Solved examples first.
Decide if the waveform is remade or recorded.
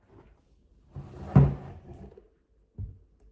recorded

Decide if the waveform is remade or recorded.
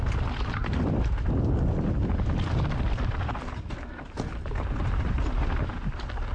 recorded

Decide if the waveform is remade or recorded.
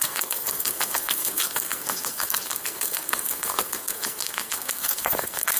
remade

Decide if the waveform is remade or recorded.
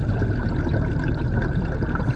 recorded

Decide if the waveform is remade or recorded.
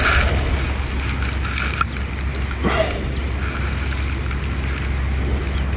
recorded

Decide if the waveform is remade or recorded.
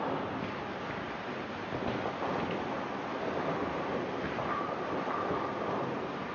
recorded